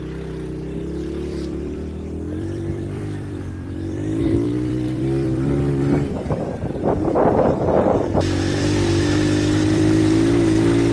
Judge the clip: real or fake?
fake